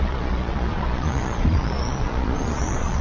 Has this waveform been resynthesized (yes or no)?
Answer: yes